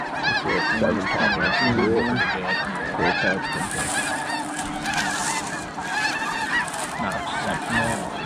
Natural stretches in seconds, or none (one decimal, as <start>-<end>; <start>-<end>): 0.0-8.3